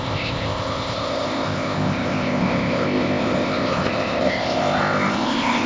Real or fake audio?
fake